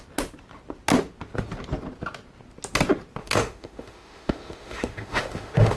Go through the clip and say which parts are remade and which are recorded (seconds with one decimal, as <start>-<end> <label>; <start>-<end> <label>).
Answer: 0.0-3.2 recorded; 3.2-5.8 remade